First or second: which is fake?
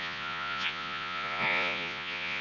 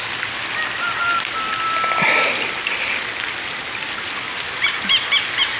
first